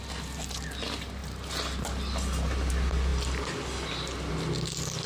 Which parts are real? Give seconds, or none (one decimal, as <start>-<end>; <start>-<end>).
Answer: 0.0-5.1